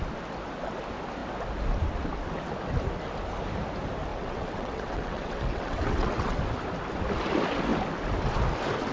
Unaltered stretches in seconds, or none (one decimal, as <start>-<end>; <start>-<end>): 0.0-4.1; 6.4-8.9